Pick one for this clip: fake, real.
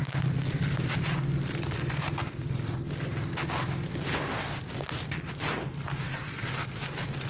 real